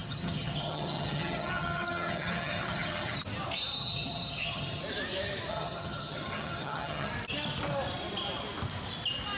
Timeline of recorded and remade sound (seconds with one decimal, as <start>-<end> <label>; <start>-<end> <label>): 0.0-3.2 remade; 3.2-3.8 recorded; 3.8-4.8 remade; 4.8-5.5 recorded; 5.5-7.1 remade; 7.1-9.4 recorded